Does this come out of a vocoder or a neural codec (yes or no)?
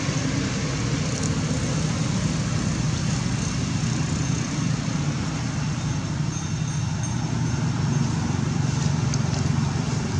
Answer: no